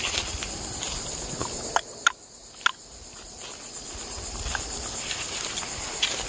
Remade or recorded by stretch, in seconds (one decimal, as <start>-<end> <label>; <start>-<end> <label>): 0.0-6.3 recorded